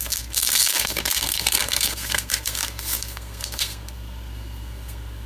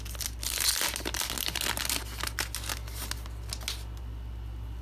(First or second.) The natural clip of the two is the second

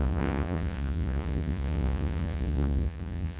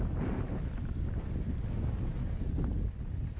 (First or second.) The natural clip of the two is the second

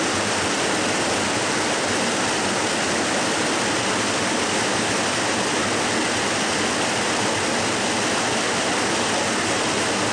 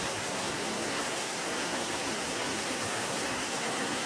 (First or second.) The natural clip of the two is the first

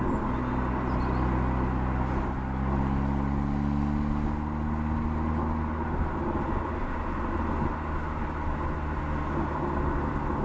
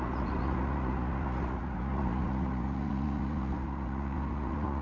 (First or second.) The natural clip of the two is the first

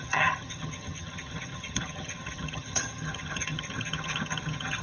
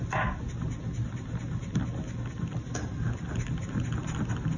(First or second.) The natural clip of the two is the second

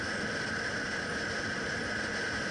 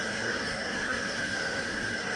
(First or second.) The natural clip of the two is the first